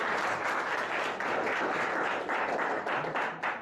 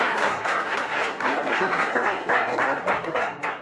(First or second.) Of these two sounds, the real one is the first